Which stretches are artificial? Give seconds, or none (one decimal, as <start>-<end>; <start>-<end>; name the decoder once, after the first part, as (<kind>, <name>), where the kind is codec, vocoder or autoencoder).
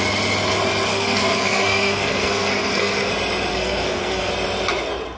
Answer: 0.9-3.1 (codec, SNAC); 3.5-4.3